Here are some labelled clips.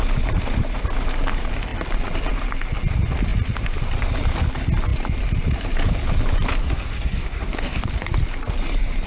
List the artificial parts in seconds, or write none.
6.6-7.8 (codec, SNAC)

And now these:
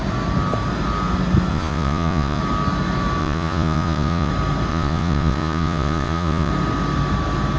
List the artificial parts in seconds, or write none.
1.5-2.4 (vocoder, Vocos); 3.2-4.3; 4.7-6.5

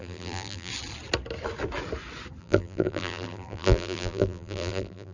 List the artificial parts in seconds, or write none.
0.0-0.7 (vocoder, BigVGAN v2); 2.4-5.1

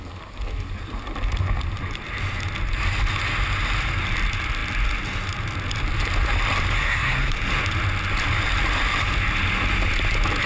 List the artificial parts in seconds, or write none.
6.7-7.3 (codec, SNAC)